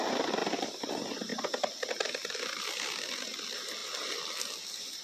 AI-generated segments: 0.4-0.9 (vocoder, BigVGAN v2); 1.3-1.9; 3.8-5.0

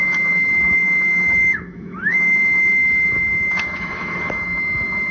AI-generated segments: 0.0-5.1 (autoencoder, DAC-VAE)

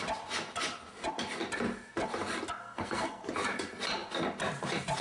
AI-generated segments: 2.6-3.2 (codec, SNAC)